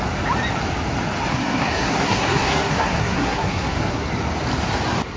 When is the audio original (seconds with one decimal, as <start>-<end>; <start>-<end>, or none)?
0.0-1.3; 4.1-5.2